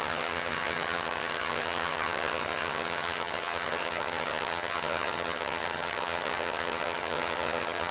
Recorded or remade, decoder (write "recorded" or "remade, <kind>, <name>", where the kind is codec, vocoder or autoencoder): remade, vocoder, HiFi-GAN